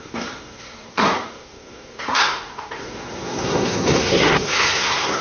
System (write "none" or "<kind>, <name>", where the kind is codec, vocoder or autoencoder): codec, SNAC